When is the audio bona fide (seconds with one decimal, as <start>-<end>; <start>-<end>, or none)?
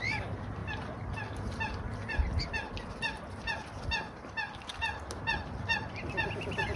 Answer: 0.0-6.8